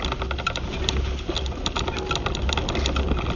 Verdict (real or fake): real